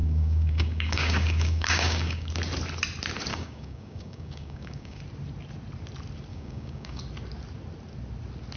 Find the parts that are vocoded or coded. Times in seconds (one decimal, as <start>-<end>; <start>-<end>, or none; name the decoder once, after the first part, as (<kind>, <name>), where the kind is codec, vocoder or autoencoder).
0.0-2.3 (codec, DAC); 3.3-5.0; 6.3-7.0